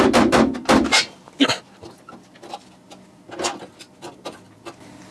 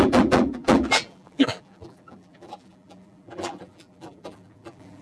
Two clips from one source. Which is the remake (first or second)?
second